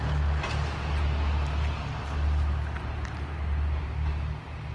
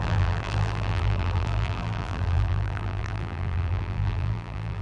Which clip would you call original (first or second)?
first